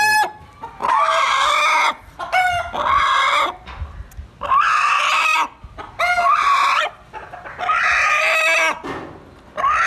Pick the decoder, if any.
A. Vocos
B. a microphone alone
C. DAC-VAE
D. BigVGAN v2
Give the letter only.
B